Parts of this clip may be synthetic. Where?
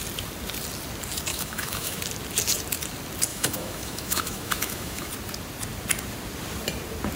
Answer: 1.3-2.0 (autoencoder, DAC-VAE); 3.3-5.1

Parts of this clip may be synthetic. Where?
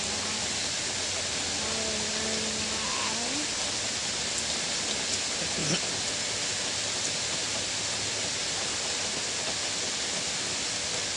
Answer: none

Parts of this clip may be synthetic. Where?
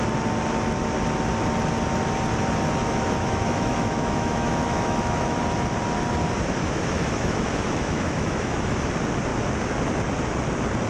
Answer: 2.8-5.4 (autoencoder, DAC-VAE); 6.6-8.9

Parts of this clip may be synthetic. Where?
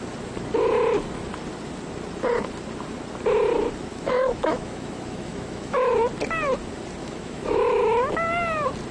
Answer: 3.9-5.9 (autoencoder, DAC-VAE); 7.0-7.8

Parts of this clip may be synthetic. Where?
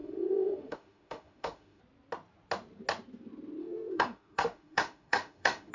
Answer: 0.0-1.8 (autoencoder, DAC-VAE); 3.6-5.7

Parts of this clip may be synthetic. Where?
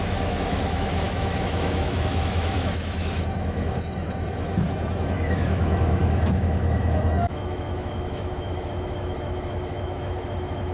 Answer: 0.0-10.7 (autoencoder, DAC-VAE)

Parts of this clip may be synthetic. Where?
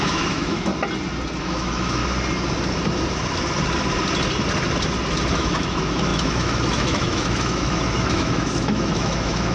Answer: 0.0-0.7 (autoencoder, DAC-VAE); 1.4-2.0; 5.3-9.5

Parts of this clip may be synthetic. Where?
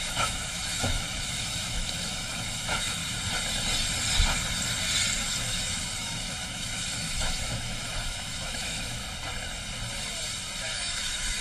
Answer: 0.0-3.0 (autoencoder, DAC-VAE); 5.2-9.0; 10.6-11.4